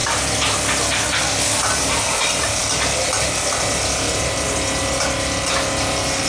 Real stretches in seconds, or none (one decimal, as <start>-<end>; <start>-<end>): 0.0-6.3